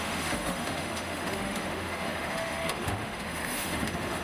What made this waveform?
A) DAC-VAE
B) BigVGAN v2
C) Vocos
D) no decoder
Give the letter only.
A